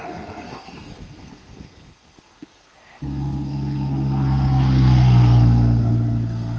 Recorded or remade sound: remade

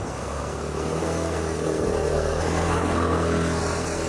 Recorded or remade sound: remade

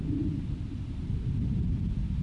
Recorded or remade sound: recorded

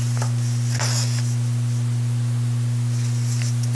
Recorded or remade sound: recorded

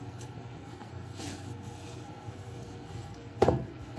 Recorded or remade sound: remade